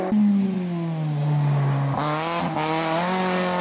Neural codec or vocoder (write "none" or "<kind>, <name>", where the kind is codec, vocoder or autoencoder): none